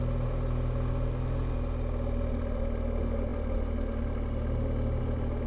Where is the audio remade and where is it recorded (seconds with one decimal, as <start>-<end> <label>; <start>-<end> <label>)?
0.0-5.5 recorded